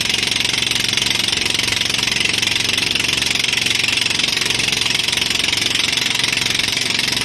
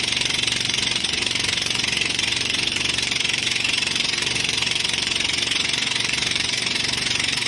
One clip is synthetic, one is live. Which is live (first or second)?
first